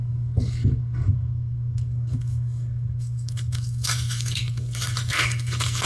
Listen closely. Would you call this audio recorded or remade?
remade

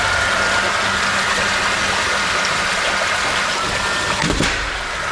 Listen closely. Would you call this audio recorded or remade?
recorded